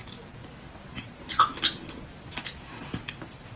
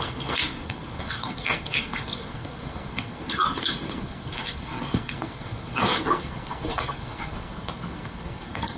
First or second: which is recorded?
first